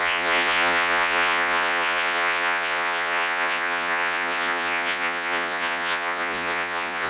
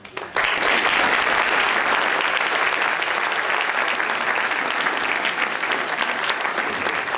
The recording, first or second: second